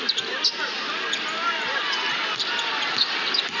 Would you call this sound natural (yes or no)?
yes